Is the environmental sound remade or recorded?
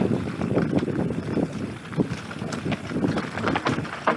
recorded